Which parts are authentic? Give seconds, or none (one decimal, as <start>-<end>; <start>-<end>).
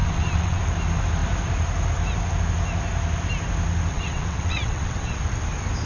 0.6-3.9; 5.2-5.9